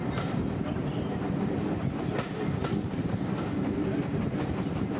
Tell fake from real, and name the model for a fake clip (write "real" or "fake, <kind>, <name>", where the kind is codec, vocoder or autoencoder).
real